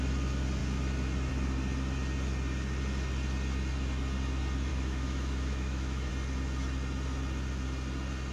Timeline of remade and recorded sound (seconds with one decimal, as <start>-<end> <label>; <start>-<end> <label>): 0.0-4.7 recorded; 4.7-6.1 remade; 6.1-8.3 recorded